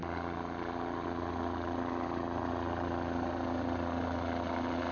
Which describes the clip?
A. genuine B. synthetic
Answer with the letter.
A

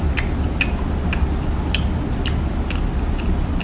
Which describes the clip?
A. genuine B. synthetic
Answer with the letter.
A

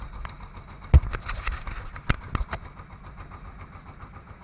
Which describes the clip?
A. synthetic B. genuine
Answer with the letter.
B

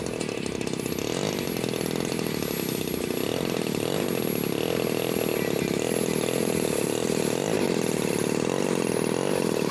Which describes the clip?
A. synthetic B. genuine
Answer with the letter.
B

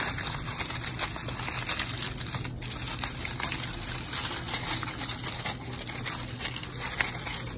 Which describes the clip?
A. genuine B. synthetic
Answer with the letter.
A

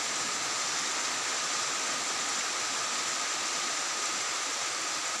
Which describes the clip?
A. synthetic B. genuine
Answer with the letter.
B